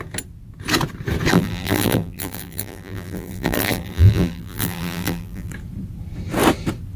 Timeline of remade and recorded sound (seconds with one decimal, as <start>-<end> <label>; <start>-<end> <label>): 0.0-1.3 recorded; 1.3-5.5 remade; 5.5-7.0 recorded